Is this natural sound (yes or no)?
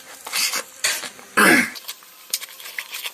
no